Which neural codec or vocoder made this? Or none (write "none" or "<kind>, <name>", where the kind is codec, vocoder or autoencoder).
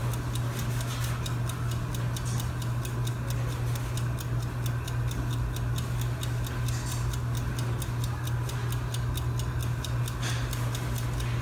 none